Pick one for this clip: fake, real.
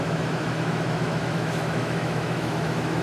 fake